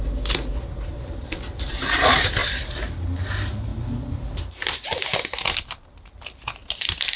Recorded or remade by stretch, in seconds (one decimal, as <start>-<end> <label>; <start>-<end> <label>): 0.0-0.9 recorded; 0.9-1.7 remade; 1.7-2.4 recorded; 2.4-3.0 remade; 3.0-3.7 recorded; 3.7-4.4 remade; 4.4-6.6 recorded; 6.6-7.2 remade